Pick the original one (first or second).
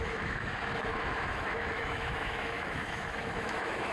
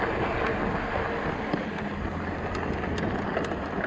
second